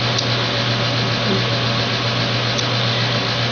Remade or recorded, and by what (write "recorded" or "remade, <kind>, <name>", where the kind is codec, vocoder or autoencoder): recorded